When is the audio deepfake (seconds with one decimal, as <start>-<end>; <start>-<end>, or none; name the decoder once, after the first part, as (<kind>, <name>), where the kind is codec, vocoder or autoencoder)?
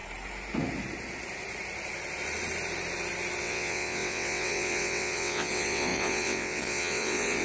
3.4-7.4 (vocoder, WaveNeXt)